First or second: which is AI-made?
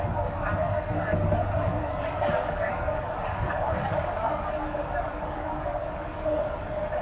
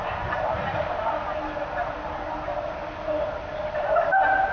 first